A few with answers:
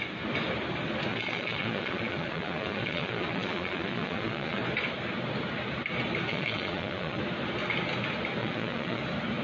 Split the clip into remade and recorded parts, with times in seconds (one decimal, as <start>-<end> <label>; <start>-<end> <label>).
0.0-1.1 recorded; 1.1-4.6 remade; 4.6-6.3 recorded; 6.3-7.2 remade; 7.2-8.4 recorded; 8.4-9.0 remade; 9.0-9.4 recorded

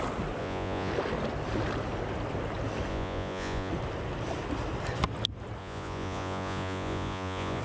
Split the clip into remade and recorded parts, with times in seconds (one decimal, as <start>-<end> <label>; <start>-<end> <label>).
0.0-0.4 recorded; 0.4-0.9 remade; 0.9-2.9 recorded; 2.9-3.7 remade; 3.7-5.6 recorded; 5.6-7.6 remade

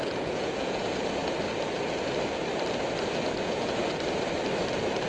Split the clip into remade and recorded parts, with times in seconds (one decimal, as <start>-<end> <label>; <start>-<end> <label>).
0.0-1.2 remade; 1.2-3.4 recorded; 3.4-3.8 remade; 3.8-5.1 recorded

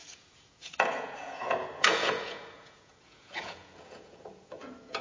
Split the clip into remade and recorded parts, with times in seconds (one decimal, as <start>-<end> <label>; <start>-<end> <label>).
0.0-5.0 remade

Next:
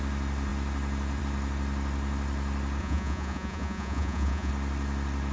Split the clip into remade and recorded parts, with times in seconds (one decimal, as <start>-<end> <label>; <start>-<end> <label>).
0.0-2.8 recorded; 2.8-4.5 remade; 4.5-5.3 recorded